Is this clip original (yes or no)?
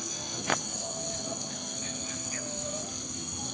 no